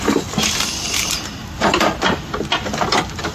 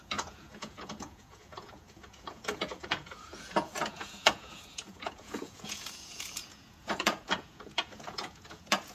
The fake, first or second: second